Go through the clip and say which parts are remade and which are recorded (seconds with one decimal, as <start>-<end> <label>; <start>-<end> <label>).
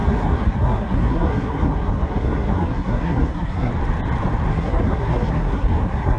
0.0-3.7 remade; 3.7-4.5 recorded; 4.5-6.2 remade